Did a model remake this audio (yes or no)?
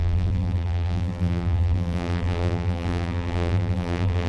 yes